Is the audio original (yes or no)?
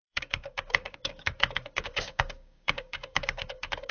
no